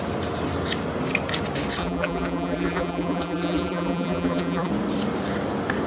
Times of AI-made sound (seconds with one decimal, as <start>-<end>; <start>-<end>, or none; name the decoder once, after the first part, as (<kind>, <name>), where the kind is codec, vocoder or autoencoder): 1.8-4.7 (vocoder, BigVGAN v2)